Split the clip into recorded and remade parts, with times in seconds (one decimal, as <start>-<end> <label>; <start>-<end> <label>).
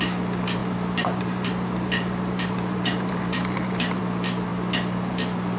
0.0-0.6 recorded; 0.6-4.0 remade; 4.0-5.6 recorded